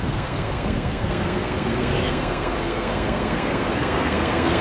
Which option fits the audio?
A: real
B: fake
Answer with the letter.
B